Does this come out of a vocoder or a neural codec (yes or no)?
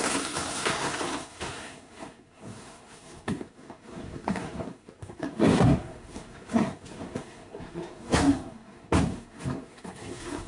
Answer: yes